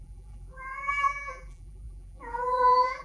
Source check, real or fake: fake